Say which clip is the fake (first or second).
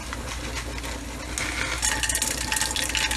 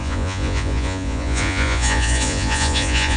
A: second